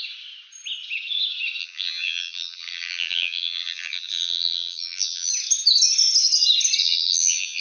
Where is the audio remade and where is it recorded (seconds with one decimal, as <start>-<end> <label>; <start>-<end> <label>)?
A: 0.0-1.6 recorded; 1.6-5.3 remade; 5.3-6.8 recorded; 6.8-7.6 remade